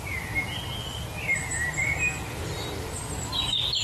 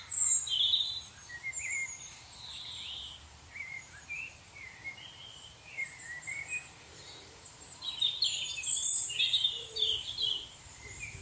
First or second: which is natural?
first